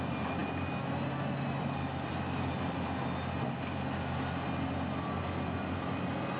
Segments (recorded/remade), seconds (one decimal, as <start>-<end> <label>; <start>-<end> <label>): 0.0-6.4 recorded